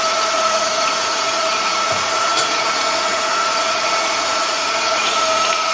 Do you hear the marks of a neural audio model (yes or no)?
yes